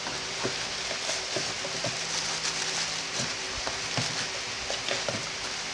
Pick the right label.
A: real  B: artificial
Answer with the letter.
A